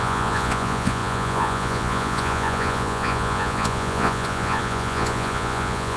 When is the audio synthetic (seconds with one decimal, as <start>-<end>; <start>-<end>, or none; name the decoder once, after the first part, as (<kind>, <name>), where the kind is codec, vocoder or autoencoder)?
0.0-6.0 (vocoder, Vocos)